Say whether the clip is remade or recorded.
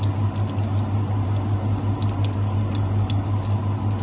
recorded